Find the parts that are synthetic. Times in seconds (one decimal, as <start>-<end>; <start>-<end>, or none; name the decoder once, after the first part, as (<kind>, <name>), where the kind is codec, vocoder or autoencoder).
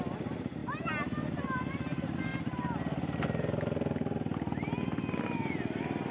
none